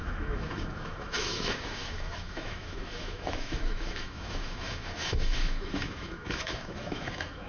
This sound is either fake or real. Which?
fake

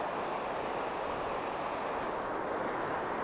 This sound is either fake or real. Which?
real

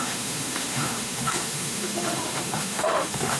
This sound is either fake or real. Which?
fake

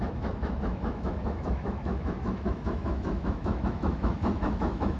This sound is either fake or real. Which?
fake